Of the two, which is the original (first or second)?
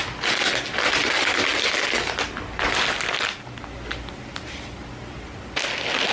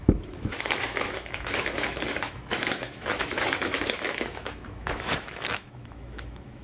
first